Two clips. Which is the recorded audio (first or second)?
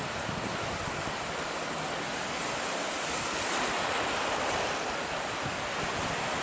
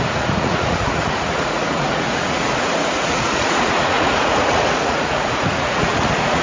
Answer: first